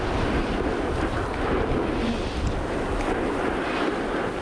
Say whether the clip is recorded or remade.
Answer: recorded